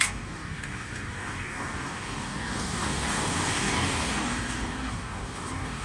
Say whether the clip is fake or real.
fake